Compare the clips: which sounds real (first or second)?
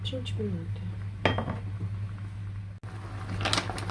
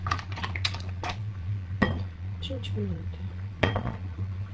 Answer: first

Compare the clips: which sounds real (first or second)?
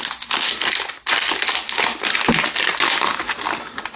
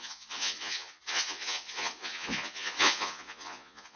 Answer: first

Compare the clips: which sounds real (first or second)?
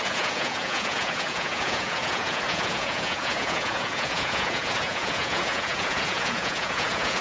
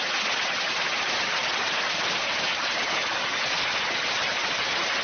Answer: second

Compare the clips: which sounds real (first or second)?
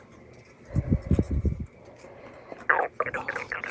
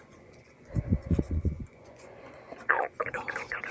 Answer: first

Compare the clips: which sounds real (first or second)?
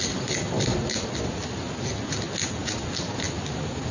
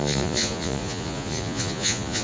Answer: first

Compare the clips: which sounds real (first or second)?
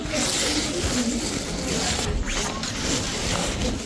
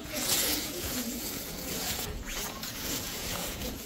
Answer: first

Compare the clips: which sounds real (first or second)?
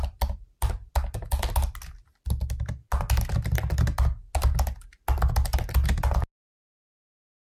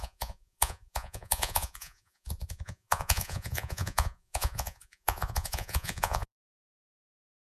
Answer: first